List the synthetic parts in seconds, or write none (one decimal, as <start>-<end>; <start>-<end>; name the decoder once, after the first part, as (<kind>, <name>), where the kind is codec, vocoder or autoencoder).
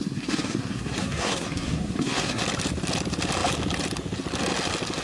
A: 0.0-2.4 (codec, SNAC)